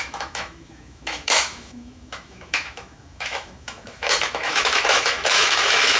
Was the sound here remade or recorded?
remade